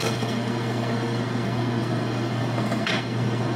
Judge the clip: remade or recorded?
remade